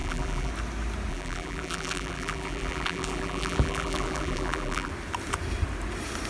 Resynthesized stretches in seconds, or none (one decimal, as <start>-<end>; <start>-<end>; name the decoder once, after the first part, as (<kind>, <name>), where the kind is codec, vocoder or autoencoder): 0.0-0.5 (vocoder, BigVGAN v2); 1.1-4.9

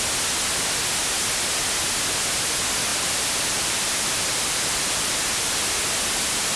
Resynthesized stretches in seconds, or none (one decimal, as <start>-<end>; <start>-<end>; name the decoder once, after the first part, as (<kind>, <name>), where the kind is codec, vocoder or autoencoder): 2.9-5.6 (vocoder, BigVGAN v2)

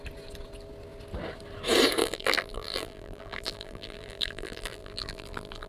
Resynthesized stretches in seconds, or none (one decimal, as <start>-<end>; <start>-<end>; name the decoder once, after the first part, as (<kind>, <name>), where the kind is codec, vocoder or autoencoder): 2.0-5.7 (vocoder, BigVGAN v2)

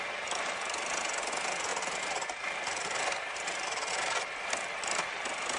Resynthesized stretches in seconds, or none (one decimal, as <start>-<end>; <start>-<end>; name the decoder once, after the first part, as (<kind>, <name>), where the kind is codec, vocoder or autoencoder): none

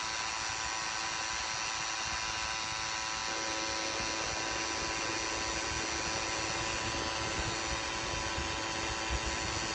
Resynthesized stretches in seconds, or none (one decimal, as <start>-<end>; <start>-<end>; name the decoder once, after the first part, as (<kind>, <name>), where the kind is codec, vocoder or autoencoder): none

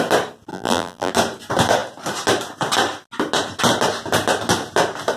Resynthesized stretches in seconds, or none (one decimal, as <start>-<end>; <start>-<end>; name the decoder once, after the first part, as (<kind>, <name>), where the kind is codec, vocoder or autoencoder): 0.5-1.1 (vocoder, BigVGAN v2)

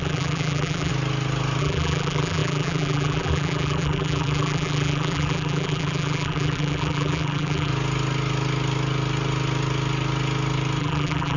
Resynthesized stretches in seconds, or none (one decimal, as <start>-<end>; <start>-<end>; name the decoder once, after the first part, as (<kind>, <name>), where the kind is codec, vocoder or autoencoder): 0.0-0.9 (vocoder, BigVGAN v2); 1.6-7.7; 10.8-11.4

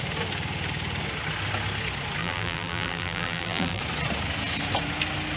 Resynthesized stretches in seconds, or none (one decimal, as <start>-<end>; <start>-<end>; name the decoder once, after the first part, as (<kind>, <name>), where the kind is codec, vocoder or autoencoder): 2.2-3.8 (vocoder, BigVGAN v2)